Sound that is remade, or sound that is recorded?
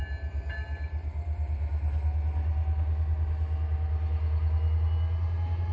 recorded